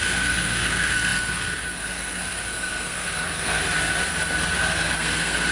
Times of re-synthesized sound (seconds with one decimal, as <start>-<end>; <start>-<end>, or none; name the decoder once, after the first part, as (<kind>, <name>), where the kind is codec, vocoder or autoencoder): 0.0-3.6 (codec, SNAC); 4.6-5.5